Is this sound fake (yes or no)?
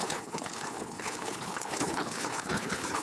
yes